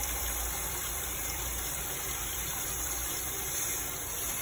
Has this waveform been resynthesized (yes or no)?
yes